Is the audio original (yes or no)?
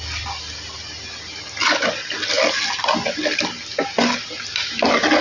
yes